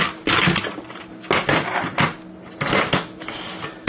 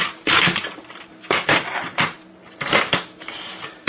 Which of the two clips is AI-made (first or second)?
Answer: second